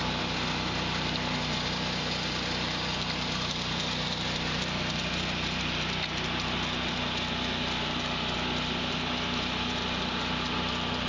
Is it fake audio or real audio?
real